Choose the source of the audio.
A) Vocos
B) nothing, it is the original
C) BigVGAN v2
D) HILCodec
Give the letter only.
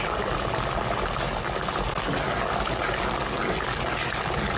B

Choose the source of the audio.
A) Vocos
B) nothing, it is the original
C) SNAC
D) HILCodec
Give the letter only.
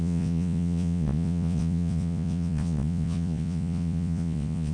A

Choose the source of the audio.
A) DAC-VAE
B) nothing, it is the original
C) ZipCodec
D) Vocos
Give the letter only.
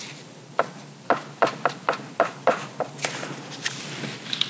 B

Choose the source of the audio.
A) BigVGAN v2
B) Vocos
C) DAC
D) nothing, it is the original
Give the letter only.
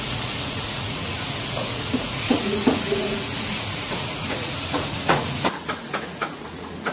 B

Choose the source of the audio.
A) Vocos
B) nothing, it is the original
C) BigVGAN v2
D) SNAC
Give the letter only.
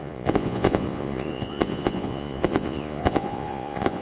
A